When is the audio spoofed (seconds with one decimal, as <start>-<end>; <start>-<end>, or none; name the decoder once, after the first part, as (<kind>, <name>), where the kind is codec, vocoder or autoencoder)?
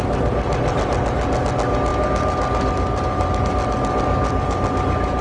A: none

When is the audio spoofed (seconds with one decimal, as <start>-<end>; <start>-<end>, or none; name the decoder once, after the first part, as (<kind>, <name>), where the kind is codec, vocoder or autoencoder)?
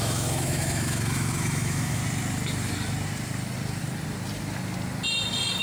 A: 0.0-2.0 (autoencoder, DAC-VAE)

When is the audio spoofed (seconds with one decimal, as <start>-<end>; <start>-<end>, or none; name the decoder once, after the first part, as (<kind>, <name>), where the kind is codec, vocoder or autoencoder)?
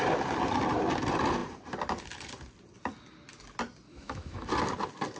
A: 3.9-4.5 (autoencoder, DAC-VAE)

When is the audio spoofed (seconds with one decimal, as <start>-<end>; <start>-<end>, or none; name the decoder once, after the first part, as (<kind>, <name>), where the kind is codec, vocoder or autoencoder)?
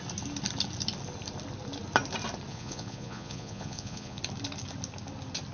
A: 2.5-4.2 (vocoder, Vocos)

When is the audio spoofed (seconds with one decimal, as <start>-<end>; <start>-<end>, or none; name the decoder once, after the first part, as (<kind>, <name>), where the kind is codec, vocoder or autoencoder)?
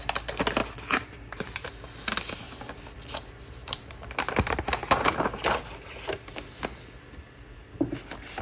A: 0.6-1.7 (vocoder, BigVGAN v2); 3.6-4.6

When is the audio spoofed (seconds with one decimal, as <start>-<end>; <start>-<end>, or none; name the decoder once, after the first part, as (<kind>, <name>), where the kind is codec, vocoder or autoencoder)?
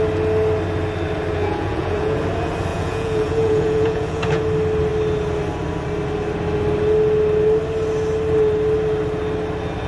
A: 1.4-2.2 (vocoder, Vocos); 2.7-4.4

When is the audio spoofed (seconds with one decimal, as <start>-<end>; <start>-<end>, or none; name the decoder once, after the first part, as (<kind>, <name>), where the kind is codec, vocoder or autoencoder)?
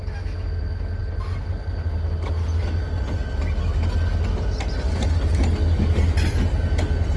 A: none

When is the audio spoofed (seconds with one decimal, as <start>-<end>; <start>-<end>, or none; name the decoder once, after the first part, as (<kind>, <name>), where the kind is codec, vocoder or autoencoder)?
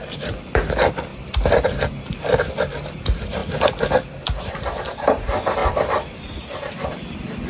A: 1.1-1.9 (vocoder, BigVGAN v2); 3.4-4.8; 5.6-7.5